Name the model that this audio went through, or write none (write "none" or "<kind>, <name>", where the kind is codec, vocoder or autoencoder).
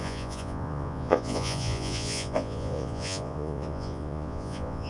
vocoder, Vocos